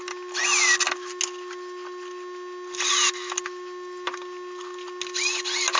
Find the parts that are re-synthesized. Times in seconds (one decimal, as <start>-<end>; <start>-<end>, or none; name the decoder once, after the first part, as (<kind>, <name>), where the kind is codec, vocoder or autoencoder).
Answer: none